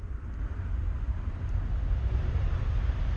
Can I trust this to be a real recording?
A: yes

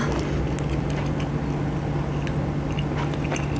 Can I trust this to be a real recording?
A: yes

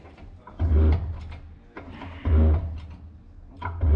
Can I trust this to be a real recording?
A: yes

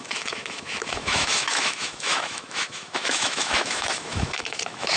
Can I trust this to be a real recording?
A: no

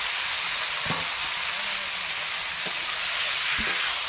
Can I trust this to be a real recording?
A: yes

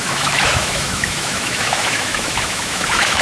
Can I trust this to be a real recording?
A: no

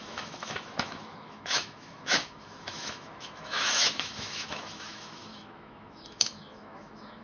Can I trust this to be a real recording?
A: no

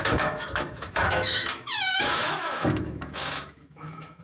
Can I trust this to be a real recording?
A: no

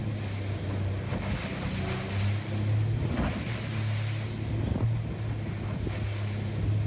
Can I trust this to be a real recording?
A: yes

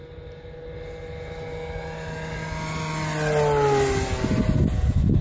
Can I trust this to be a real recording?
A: yes